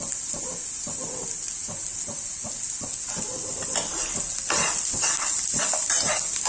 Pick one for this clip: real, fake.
real